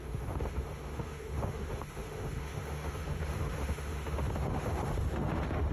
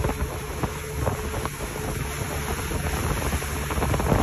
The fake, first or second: first